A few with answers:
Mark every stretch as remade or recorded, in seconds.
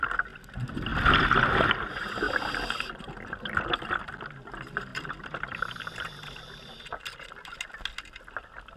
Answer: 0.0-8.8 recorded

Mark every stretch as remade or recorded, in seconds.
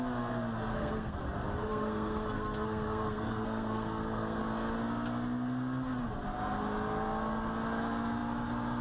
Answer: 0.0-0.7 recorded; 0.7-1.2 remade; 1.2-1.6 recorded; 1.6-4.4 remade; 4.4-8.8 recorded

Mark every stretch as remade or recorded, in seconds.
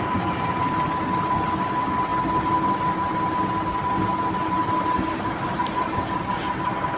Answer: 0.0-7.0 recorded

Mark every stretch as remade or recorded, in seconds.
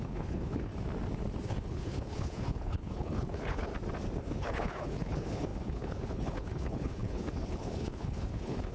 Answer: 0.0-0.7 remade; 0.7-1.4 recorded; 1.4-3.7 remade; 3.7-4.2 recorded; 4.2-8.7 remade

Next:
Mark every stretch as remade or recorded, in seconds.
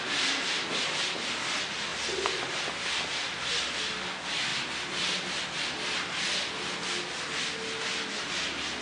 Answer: 0.0-8.8 recorded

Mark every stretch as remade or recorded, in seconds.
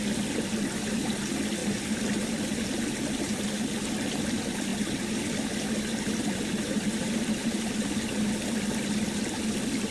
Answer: 0.0-4.7 recorded; 4.7-7.9 remade; 7.9-9.9 recorded